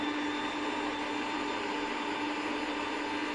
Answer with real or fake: real